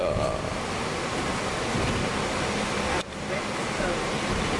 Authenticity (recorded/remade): recorded